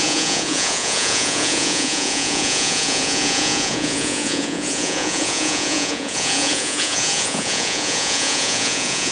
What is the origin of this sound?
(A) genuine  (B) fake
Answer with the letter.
B